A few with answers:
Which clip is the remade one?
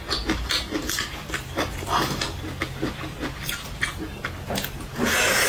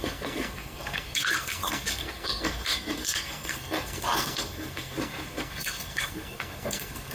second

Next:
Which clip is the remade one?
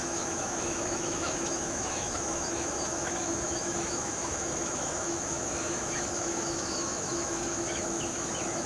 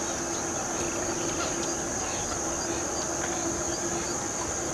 first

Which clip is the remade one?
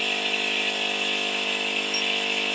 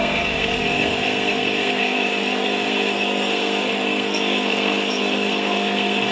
second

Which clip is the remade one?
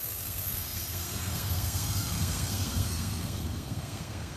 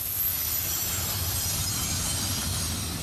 first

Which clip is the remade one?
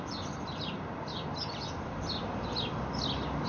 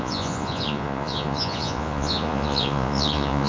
second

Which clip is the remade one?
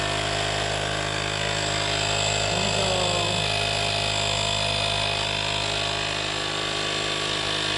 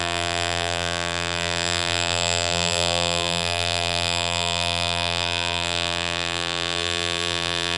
second